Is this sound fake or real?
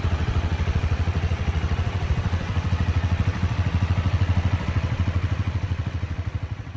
fake